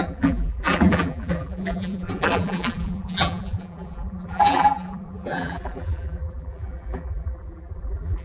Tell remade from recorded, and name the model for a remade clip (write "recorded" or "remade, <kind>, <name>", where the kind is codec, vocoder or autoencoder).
remade, vocoder, BigVGAN v2